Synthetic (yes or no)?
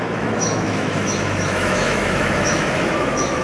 yes